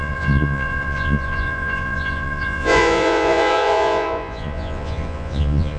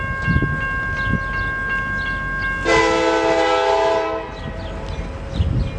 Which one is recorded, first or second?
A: second